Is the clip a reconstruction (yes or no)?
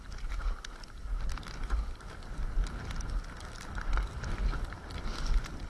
no